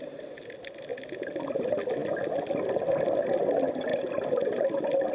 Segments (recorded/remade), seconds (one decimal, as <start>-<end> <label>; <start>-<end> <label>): 0.0-5.1 recorded